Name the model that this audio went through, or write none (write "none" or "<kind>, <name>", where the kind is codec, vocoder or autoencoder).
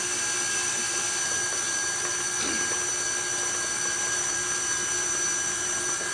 none